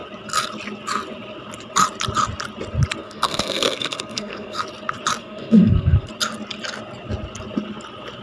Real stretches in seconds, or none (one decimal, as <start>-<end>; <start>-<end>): 0.0-3.0; 4.6-5.2; 6.1-8.2